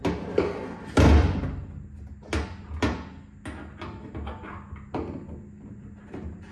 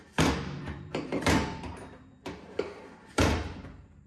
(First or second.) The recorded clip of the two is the first